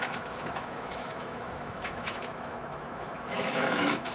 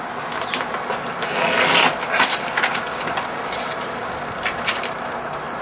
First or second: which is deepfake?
first